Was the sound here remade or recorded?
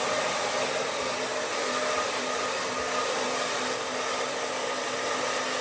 recorded